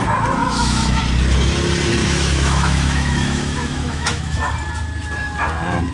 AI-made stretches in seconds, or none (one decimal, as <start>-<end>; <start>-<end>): 0.4-1.0; 2.0-4.5